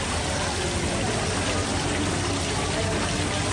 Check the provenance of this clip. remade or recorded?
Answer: recorded